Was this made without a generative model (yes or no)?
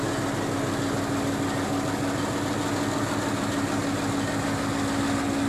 yes